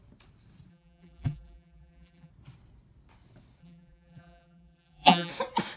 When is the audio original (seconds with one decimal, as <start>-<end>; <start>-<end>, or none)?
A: 0.0-0.7; 2.3-3.6; 5.3-5.8